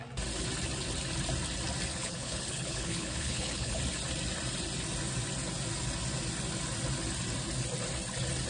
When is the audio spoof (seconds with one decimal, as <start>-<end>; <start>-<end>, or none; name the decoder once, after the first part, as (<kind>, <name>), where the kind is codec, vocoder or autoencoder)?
1.9-3.8 (codec, HILCodec)